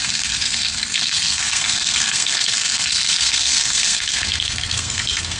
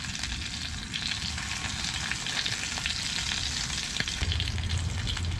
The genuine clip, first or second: second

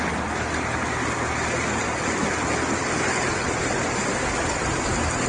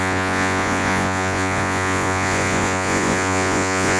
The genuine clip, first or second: first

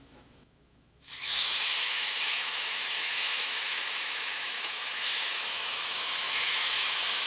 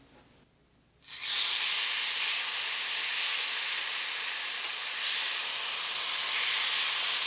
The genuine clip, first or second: second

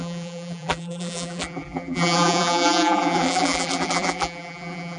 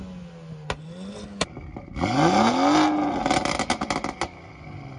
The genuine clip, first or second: second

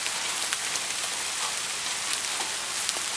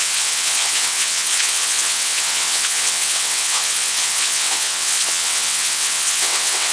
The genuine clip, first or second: first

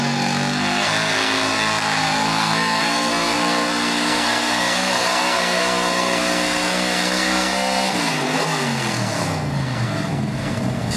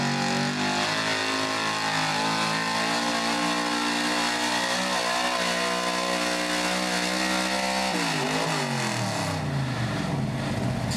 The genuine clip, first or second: second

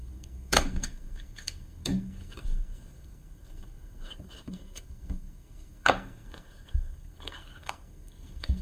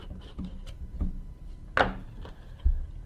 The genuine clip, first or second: second